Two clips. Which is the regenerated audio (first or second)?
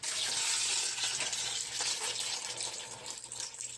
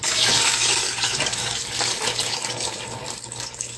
second